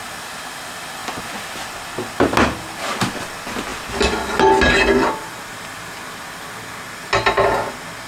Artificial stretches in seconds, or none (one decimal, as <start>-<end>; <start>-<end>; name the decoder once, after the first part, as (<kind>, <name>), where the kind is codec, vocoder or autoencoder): none

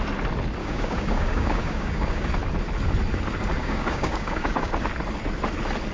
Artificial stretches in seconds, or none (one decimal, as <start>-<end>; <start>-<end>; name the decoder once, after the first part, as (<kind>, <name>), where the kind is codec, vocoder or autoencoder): 0.6-2.3 (codec, DAC); 3.6-4.7